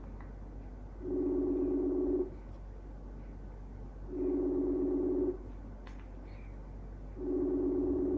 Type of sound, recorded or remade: recorded